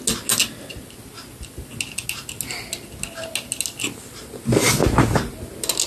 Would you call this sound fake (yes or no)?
no